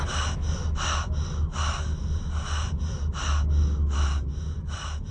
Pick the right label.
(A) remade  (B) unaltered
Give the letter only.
B